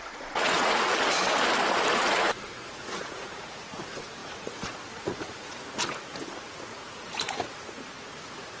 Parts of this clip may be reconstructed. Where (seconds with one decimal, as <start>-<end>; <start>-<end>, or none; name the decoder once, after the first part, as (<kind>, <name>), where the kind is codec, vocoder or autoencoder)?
0.0-0.9 (vocoder, Vocos); 1.9-8.6